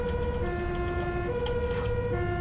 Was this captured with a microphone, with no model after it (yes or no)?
yes